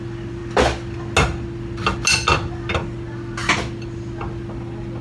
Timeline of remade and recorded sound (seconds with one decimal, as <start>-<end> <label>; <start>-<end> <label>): 0.0-5.0 recorded